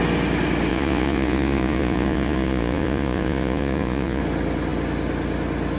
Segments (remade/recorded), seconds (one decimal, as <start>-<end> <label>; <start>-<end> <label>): 0.0-0.7 recorded; 0.7-4.2 remade; 4.2-5.8 recorded